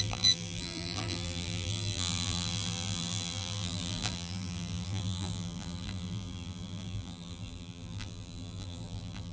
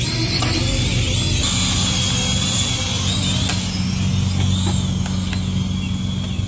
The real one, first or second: second